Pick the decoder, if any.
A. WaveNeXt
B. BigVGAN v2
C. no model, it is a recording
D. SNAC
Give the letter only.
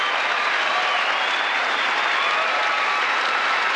B